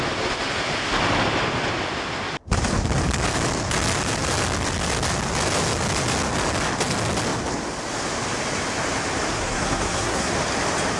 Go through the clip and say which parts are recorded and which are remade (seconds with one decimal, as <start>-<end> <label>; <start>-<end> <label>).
0.0-9.3 recorded; 9.3-10.3 remade; 10.3-11.0 recorded